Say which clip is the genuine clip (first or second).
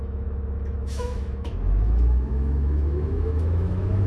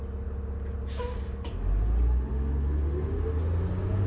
second